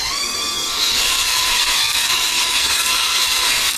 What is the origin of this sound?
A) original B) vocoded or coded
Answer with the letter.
B